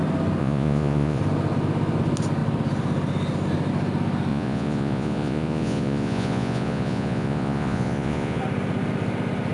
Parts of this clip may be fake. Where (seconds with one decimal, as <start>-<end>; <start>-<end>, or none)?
0.4-1.2; 4.3-8.4